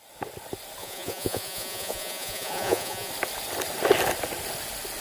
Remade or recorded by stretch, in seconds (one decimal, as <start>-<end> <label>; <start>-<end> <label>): 0.0-0.8 recorded; 0.8-3.1 remade; 3.1-5.0 recorded